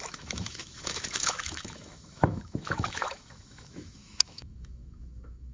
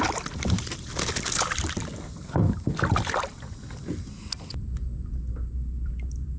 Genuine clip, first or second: second